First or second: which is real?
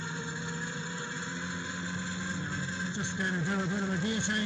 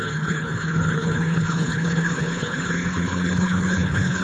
first